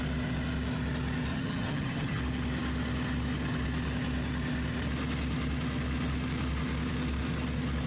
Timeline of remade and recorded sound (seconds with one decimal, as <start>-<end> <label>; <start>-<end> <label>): 0.0-1.3 recorded; 1.3-2.2 remade; 2.2-7.9 recorded